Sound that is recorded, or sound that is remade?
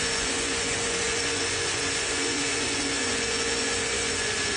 remade